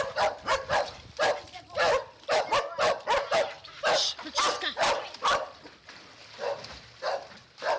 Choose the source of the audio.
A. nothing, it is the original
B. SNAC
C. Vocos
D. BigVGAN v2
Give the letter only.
A